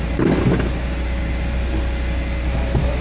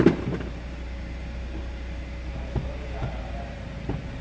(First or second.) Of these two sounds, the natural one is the first